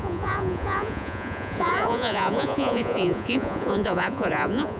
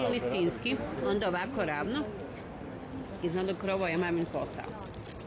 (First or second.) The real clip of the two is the second